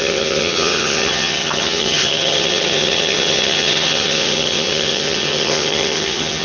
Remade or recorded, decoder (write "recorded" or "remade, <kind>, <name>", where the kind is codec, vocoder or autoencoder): remade, vocoder, HiFi-GAN